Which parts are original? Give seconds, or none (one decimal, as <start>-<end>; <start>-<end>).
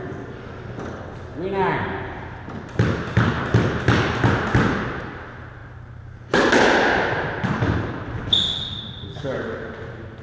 0.0-10.2